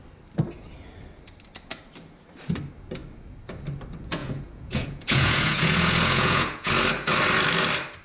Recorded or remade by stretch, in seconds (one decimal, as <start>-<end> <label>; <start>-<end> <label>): 0.0-4.2 recorded; 4.2-6.7 remade; 6.7-8.0 recorded

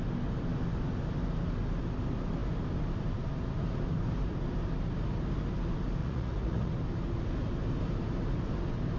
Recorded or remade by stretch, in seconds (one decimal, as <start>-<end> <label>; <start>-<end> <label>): 0.0-6.0 recorded; 6.0-6.7 remade; 6.7-9.0 recorded

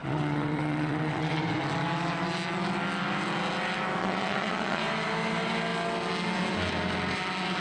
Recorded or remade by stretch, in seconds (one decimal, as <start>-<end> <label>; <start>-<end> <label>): 0.0-1.4 remade; 1.4-4.0 recorded; 4.0-4.8 remade; 4.8-7.6 recorded

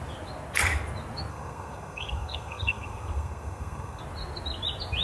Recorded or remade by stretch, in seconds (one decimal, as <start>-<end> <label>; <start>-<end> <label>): 0.0-1.3 recorded; 1.3-4.0 remade; 4.0-5.0 recorded

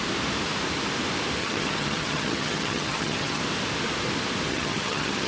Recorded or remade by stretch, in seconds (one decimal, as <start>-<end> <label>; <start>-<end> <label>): 0.0-1.4 recorded; 1.4-3.4 remade; 3.4-4.5 recorded; 4.5-5.3 remade

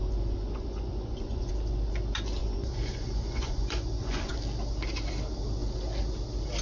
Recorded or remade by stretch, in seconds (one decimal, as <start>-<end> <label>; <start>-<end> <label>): 0.0-1.5 remade; 1.5-2.4 recorded; 2.4-4.3 remade; 4.3-6.6 recorded